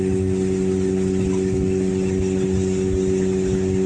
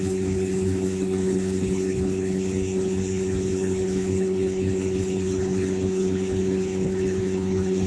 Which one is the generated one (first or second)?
second